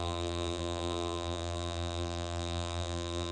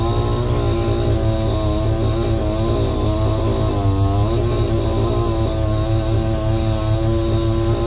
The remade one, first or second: first